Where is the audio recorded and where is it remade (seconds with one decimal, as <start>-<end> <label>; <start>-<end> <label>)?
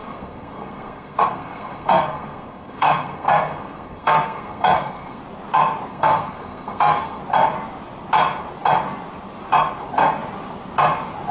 0.0-5.2 remade; 5.2-5.9 recorded; 5.9-7.2 remade; 7.2-11.3 recorded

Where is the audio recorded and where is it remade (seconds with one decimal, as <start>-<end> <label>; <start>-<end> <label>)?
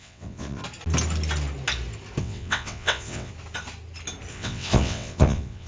0.0-0.6 remade; 0.6-2.2 recorded; 2.2-3.3 remade; 3.3-4.3 recorded; 4.3-5.7 remade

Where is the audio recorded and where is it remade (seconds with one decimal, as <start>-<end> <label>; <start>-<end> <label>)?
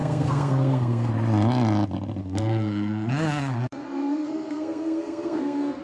0.0-1.1 remade; 1.1-2.2 recorded; 2.2-5.8 remade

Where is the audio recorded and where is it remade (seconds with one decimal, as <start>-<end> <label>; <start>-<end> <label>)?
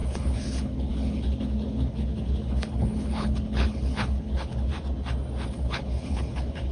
0.0-4.7 remade; 4.7-5.5 recorded; 5.5-6.7 remade